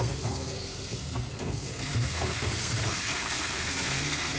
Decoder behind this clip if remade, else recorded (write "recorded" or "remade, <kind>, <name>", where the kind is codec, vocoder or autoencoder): remade, codec, SNAC